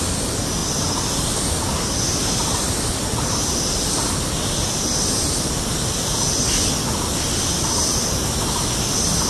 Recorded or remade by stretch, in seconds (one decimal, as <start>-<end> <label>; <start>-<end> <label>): 0.0-9.3 recorded